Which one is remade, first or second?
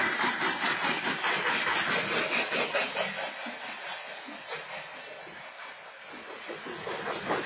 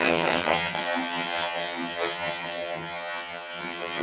second